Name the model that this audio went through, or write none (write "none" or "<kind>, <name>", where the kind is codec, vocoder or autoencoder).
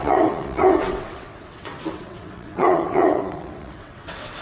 vocoder, WaveNeXt